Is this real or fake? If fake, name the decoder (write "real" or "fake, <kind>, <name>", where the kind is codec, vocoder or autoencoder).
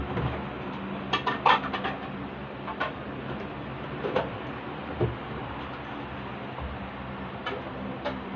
real